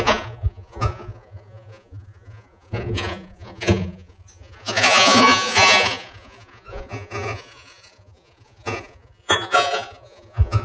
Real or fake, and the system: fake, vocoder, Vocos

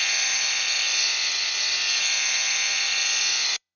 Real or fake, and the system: fake, vocoder, Vocos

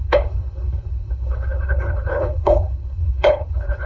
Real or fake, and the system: fake, codec, HILCodec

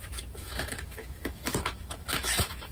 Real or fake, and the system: fake, autoencoder, DAC-VAE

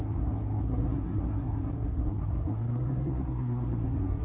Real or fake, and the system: fake, codec, SNAC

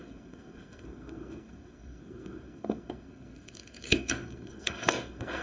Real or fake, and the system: fake, codec, SNAC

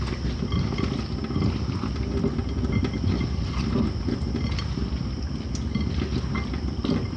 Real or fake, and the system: real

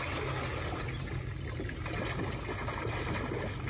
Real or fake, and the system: real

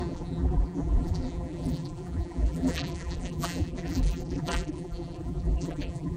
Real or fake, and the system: fake, vocoder, BigVGAN v2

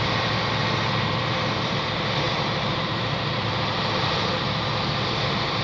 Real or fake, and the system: fake, vocoder, BigVGAN v2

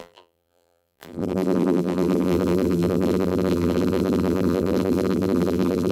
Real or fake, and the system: fake, vocoder, BigVGAN v2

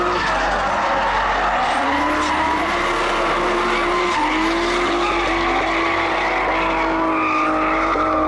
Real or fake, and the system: real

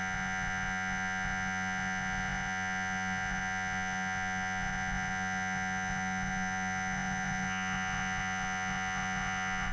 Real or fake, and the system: fake, vocoder, Vocos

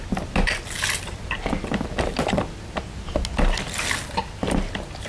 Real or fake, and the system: real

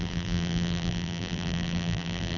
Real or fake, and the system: fake, vocoder, BigVGAN v2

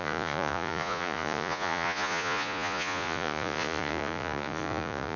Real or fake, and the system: fake, vocoder, Vocos